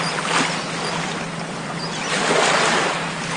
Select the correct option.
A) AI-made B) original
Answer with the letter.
B